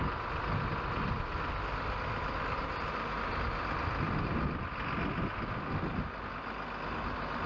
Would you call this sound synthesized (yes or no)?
no